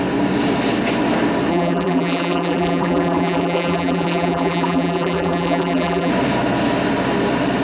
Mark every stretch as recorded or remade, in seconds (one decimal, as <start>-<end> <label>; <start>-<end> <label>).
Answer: 0.0-1.5 recorded; 1.5-6.1 remade; 6.1-7.6 recorded